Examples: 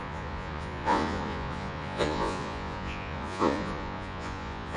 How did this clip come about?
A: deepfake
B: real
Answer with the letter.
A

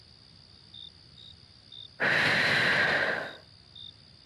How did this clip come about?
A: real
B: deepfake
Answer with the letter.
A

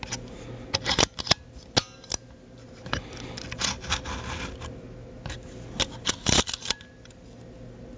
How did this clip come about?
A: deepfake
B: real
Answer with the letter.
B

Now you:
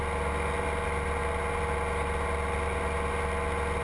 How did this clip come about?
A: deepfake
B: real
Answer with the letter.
B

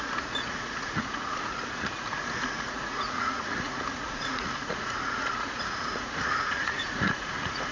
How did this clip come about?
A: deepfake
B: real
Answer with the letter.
A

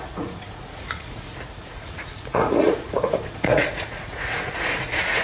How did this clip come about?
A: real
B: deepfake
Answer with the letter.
B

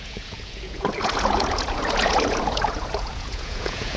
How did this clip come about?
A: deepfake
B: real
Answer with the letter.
A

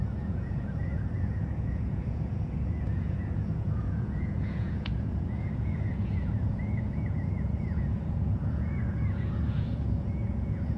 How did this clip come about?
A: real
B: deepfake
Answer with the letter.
B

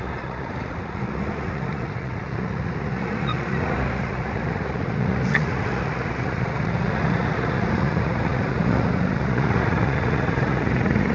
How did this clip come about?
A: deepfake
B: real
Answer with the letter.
A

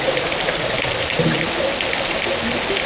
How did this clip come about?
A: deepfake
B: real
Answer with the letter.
B